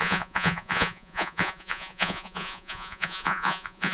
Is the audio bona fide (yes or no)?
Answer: no